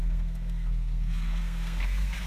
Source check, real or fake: fake